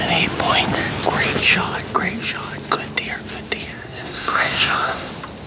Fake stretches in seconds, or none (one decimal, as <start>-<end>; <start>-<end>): 3.7-5.1